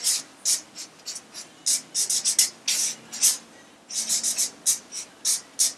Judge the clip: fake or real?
real